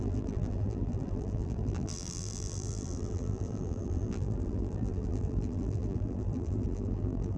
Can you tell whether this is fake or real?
fake